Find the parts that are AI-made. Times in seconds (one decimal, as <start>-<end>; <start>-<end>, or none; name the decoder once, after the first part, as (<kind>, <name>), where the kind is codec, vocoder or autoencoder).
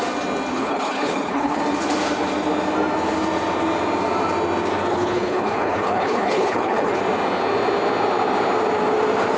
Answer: 0.5-1.6 (codec, HILCodec); 4.9-7.0